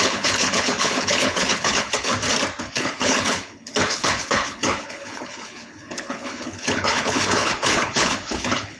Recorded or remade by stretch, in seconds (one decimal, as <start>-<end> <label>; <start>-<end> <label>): 0.0-2.1 remade; 2.1-2.6 recorded; 2.6-8.8 remade